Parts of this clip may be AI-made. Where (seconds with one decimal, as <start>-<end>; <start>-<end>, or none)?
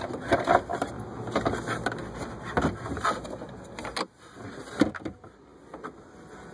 none